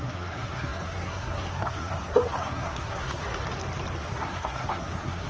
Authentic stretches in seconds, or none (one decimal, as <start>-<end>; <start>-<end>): 3.4-4.0